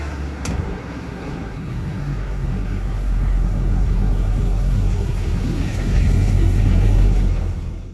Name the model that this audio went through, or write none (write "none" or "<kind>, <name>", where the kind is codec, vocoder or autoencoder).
codec, SNAC